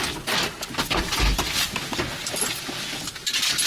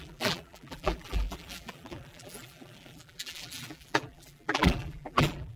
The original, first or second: first